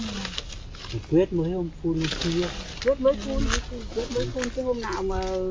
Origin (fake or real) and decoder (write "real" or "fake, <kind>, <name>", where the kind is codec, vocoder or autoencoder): real